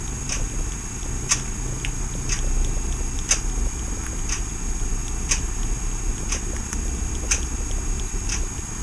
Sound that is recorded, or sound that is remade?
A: recorded